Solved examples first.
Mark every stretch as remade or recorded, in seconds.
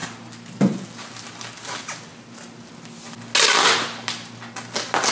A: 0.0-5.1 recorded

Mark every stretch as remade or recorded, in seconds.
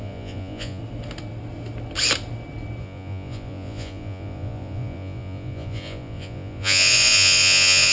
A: 0.0-0.8 remade; 0.8-2.8 recorded; 2.8-7.9 remade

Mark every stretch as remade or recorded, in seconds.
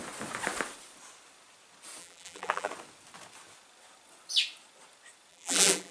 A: 0.0-2.0 recorded; 2.0-2.7 remade; 2.7-5.3 recorded; 5.3-5.9 remade